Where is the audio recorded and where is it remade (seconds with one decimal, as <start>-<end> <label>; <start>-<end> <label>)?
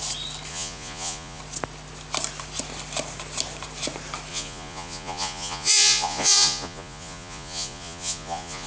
0.0-0.5 recorded; 0.5-1.4 remade; 1.4-4.3 recorded; 4.3-8.7 remade